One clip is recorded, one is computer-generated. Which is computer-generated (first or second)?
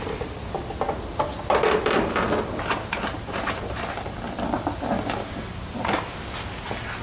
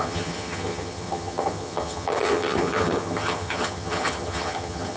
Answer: second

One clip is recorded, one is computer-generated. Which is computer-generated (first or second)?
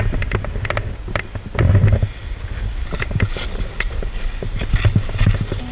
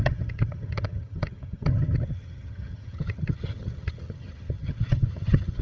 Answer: second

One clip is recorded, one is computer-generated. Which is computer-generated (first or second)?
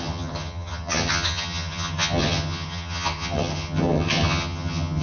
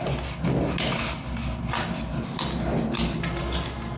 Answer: first